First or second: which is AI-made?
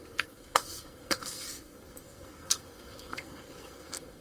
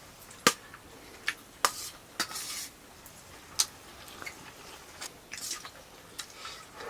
first